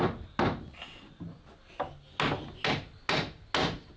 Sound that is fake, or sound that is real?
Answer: real